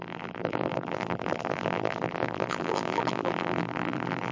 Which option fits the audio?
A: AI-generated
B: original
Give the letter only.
A